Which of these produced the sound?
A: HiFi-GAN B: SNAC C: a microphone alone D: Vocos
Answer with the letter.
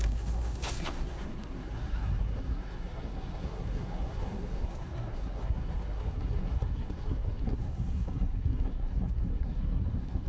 B